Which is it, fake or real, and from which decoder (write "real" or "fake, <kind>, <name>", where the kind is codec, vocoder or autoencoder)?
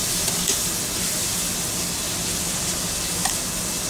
real